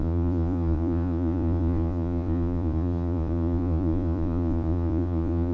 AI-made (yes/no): yes